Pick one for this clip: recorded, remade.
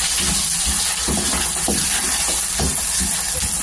recorded